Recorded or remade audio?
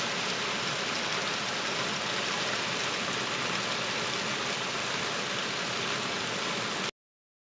recorded